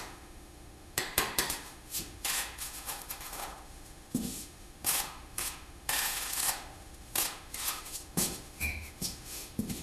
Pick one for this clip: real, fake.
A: fake